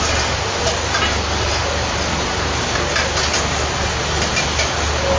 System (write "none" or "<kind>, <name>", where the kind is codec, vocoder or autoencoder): none